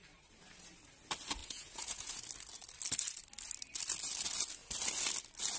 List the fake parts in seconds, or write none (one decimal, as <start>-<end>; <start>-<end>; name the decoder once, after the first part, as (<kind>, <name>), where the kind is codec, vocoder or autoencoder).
1.4-2.2 (vocoder, Vocos)